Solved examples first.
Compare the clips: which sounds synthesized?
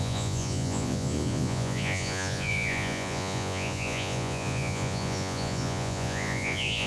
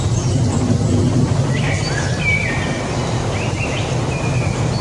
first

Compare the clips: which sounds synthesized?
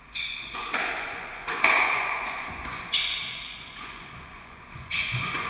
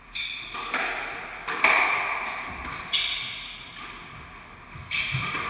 first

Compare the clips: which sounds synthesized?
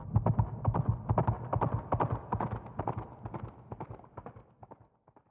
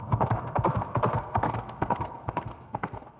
second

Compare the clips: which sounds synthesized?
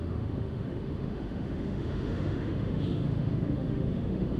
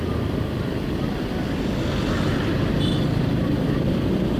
first